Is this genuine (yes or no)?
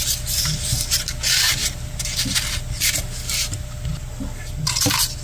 yes